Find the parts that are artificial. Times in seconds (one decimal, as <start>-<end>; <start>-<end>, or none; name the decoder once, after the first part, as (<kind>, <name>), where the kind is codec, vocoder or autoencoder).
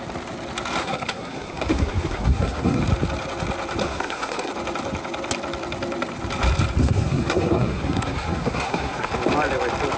0.8-2.8 (codec, SNAC); 3.8-4.5; 6.8-9.1